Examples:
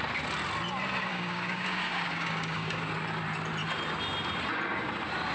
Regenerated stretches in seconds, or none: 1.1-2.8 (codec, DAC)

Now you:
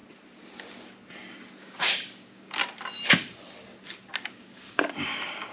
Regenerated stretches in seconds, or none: 1.6-2.6 (codec, DAC); 4.3-5.5

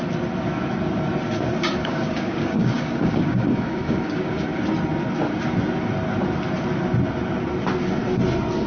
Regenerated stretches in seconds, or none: 1.8-4.6 (codec, DAC)